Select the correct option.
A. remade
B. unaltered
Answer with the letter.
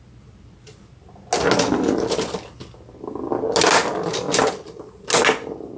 B